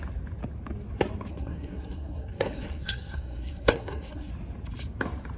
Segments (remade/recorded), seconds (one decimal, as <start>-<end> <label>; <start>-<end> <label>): 0.0-1.3 recorded; 1.3-4.3 remade; 4.3-5.4 recorded